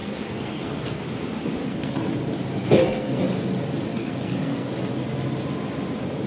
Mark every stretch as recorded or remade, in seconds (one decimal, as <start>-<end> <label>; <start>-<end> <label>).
0.0-1.0 remade; 1.0-1.6 recorded; 1.6-2.1 remade; 2.1-2.6 recorded; 2.6-3.2 remade; 3.2-3.9 recorded; 3.9-4.7 remade; 4.7-6.3 recorded